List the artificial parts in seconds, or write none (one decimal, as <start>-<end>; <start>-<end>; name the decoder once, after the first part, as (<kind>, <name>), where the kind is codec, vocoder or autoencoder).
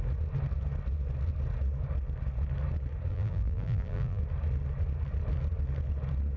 3.1-4.2 (vocoder, BigVGAN v2)